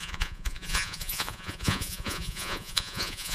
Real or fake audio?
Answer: fake